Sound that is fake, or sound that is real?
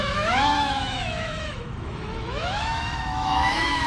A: fake